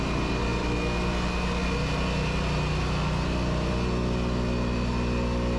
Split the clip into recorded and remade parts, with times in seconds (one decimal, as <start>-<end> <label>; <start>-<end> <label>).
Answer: 0.0-5.6 recorded